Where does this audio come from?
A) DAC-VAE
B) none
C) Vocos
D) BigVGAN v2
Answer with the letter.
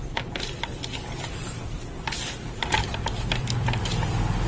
D